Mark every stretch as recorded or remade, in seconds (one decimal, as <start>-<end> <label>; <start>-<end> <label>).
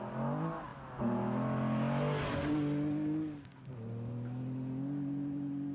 0.0-5.7 recorded